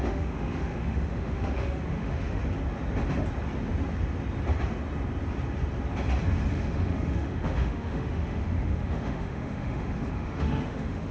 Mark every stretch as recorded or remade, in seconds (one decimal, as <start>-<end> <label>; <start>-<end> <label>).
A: 0.0-2.4 remade; 2.4-6.5 recorded; 6.5-11.1 remade